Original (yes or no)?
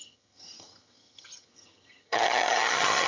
no